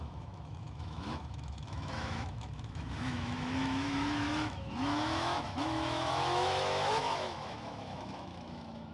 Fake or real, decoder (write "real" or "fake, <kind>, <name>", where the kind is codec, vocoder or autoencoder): fake, autoencoder, DAC-VAE